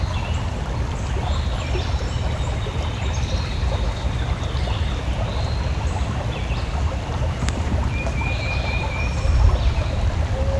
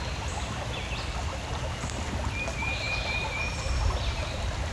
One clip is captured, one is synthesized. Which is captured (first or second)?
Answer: second